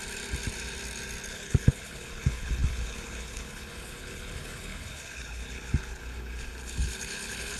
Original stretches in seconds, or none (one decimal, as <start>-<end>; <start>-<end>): 0.0-1.3